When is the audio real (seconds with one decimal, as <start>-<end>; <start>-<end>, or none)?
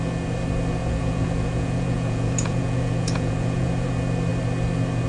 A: 0.0-0.8; 3.9-5.1